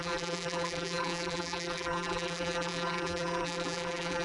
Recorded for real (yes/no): no